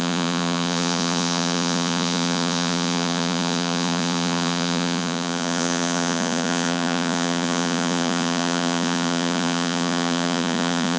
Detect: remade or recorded remade